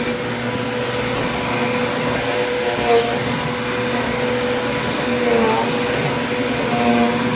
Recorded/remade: recorded